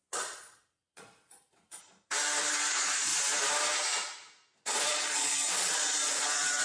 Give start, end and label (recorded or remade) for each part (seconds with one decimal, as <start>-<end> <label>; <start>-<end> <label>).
0.0-1.8 remade; 1.8-2.7 recorded; 2.7-3.1 remade; 3.1-4.7 recorded; 4.7-6.6 remade